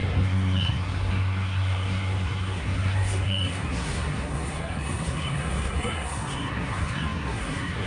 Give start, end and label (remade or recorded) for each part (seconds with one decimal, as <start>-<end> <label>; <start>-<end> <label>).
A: 0.0-7.9 remade